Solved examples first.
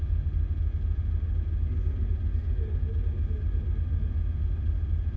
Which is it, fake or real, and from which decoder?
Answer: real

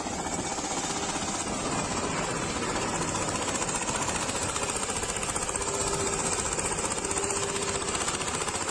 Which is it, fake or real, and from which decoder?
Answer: real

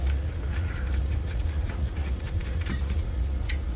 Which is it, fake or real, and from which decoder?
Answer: fake, vocoder, Vocos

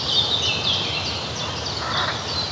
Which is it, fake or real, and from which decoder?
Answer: real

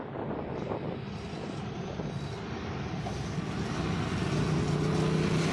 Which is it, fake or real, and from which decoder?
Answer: real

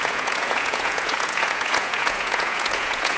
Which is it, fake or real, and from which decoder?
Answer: fake, vocoder, Vocos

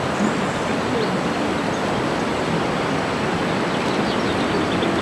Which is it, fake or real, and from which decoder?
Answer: real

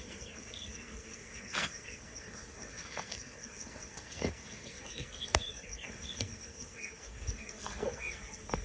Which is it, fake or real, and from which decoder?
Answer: fake, codec, SNAC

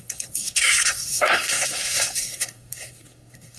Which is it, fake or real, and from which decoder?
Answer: fake, codec, SNAC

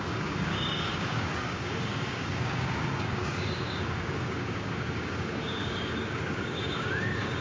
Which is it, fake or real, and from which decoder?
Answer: fake, codec, DAC